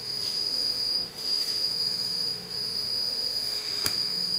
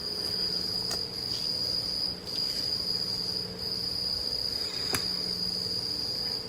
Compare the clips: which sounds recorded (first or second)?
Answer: second